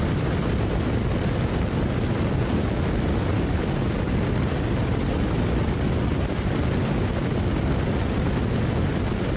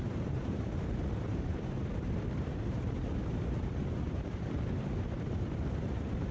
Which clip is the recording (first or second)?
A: first